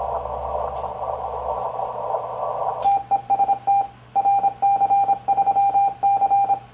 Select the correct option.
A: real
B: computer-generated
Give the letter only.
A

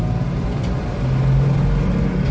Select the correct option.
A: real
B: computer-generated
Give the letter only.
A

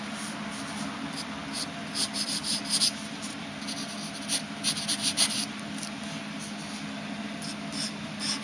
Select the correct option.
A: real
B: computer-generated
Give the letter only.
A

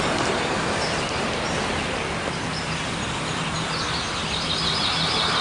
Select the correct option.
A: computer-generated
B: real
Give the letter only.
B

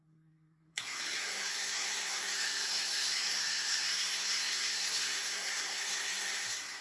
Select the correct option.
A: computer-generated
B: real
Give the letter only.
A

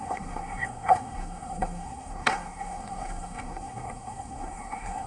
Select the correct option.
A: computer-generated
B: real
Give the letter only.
A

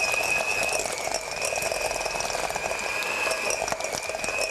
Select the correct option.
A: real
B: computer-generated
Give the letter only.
A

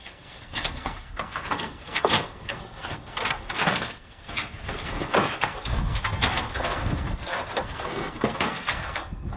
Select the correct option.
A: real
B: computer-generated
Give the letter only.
B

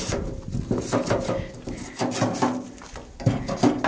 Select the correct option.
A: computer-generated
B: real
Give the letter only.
B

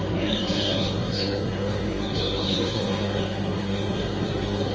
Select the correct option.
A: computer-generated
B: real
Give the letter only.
A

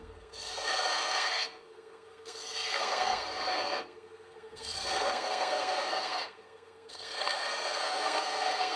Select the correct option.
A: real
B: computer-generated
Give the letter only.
B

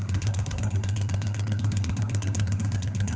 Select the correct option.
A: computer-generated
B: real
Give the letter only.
A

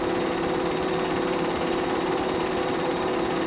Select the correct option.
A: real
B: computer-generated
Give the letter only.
A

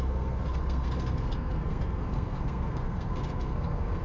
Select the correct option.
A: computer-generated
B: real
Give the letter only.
A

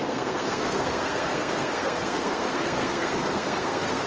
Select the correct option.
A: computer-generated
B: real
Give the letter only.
A